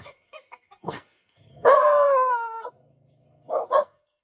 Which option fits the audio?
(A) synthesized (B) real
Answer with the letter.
A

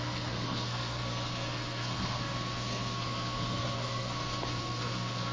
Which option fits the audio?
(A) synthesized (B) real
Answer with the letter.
A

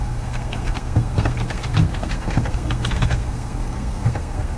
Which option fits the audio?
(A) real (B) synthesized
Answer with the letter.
B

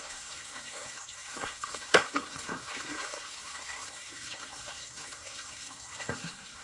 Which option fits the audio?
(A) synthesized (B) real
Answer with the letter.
A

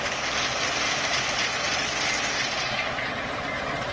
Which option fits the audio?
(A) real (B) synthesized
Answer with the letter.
A